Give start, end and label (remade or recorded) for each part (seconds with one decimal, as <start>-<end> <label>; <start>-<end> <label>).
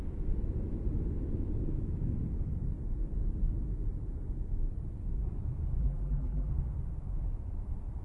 0.0-5.8 recorded; 5.8-6.5 remade; 6.5-8.0 recorded